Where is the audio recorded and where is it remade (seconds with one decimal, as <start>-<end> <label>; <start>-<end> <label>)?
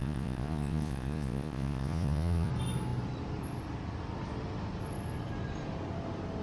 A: 0.0-2.5 remade; 2.5-6.4 recorded